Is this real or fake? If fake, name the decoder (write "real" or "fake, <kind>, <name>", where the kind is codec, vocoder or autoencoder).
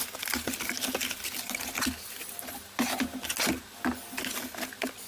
real